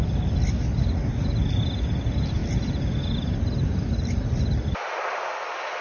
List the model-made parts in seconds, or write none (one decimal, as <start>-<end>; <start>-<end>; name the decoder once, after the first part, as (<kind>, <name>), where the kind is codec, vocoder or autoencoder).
none